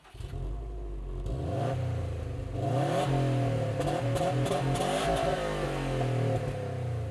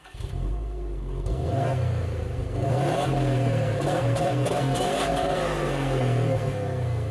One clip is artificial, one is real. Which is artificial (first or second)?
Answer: second